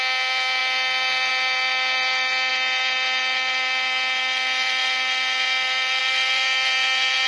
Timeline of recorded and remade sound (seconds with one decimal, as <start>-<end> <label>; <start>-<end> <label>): 0.0-7.3 remade